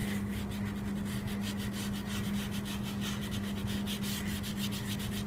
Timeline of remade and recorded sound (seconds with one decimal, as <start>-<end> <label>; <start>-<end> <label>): 0.0-5.3 recorded